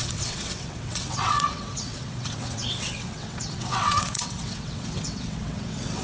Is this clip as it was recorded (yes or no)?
no